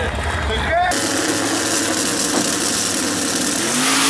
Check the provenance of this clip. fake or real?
real